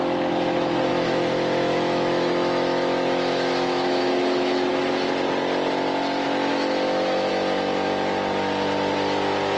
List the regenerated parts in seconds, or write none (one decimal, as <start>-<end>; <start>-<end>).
0.9-4.7; 6.5-7.3

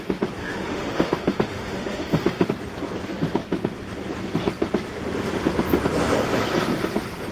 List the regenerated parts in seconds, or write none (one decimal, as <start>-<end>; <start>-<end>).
0.4-2.5

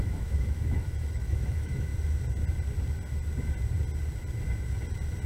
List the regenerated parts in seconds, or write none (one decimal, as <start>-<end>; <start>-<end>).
0.0-1.9

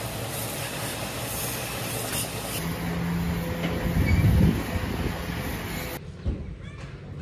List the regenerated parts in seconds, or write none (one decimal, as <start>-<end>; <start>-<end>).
none

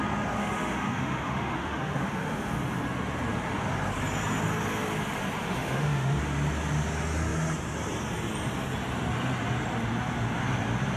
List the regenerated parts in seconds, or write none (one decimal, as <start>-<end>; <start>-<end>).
0.4-2.5; 5.4-6.2

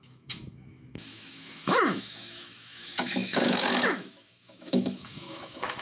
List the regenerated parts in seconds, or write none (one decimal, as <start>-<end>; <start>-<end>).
0.0-5.8

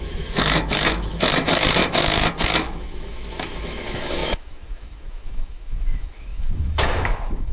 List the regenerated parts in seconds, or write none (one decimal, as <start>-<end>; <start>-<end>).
0.0-7.5

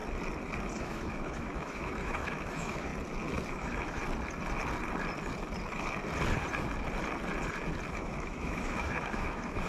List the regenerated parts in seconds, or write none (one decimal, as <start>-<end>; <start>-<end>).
0.8-2.9; 3.5-4.0; 7.9-9.7